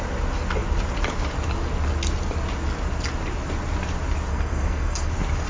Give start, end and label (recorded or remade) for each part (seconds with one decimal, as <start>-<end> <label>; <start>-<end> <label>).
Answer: 0.0-4.3 recorded; 4.3-5.1 remade; 5.1-5.5 recorded